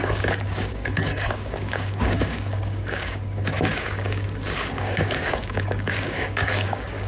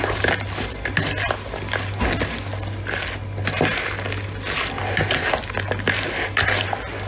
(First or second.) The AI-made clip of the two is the first